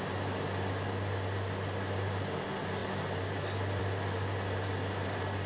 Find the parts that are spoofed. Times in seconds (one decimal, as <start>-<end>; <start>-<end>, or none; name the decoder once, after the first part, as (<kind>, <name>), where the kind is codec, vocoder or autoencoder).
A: none